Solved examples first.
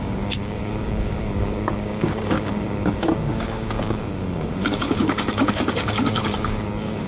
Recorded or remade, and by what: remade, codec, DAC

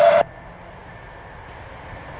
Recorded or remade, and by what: recorded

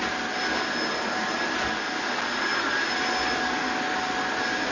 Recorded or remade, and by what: recorded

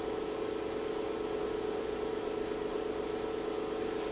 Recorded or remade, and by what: recorded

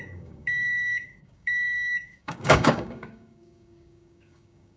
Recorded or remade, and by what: remade, codec, DAC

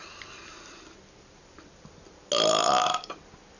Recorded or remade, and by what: recorded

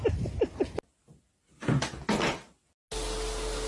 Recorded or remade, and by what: recorded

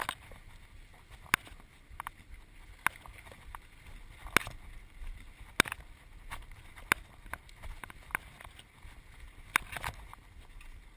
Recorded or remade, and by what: recorded